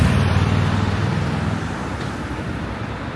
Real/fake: fake